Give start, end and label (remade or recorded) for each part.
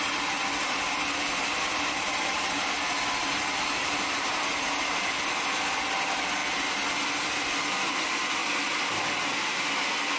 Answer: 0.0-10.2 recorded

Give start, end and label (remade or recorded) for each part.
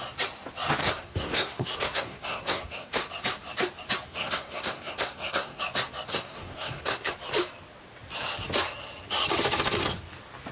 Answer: 0.0-0.8 recorded; 0.8-3.1 remade; 3.1-4.1 recorded; 4.1-5.6 remade; 5.6-6.1 recorded; 6.1-7.1 remade; 7.1-10.5 recorded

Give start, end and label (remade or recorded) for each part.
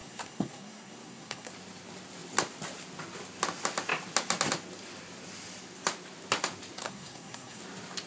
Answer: 0.0-1.5 remade; 1.5-6.8 recorded; 6.8-7.6 remade; 7.6-8.1 recorded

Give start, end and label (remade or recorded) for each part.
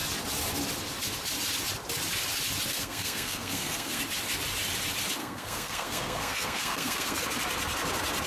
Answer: 0.0-2.7 recorded; 2.7-4.0 remade; 4.0-5.2 recorded; 5.2-7.2 remade; 7.2-8.3 recorded